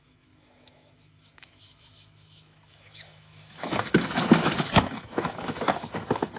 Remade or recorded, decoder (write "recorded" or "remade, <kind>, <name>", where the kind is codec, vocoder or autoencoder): remade, autoencoder, DAC-VAE